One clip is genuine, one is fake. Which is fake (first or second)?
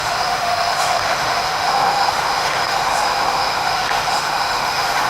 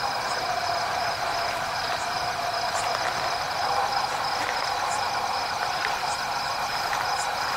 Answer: first